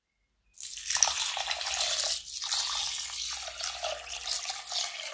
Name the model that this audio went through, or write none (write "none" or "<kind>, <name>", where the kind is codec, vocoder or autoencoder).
none